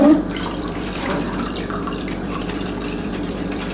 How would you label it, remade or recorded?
remade